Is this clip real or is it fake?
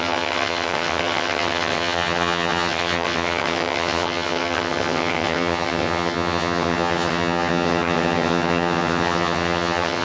fake